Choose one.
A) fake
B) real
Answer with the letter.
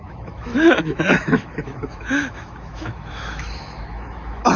A